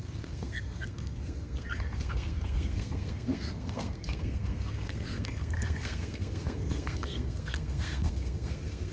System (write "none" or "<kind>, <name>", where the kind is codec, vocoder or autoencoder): codec, SNAC